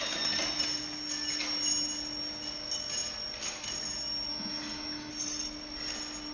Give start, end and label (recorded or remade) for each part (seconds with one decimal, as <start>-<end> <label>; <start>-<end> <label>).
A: 0.0-4.3 recorded; 4.3-5.1 remade; 5.1-6.3 recorded